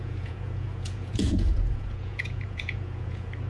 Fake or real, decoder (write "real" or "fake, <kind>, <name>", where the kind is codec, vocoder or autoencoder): fake, vocoder, Vocos